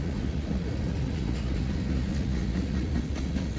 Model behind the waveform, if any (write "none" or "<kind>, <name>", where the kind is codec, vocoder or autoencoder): vocoder, Vocos